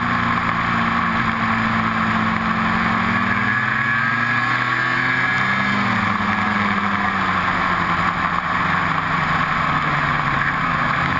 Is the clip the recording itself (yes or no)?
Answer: yes